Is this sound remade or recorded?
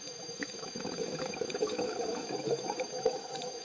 remade